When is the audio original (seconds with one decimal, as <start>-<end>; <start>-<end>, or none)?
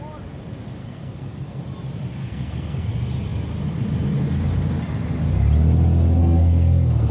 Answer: 0.0-0.8; 1.6-2.2; 2.9-6.2